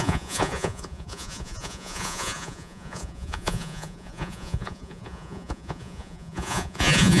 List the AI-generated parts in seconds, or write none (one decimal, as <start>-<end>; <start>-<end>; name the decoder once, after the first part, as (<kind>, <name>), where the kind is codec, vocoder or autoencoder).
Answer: 0.0-7.2 (vocoder, Vocos)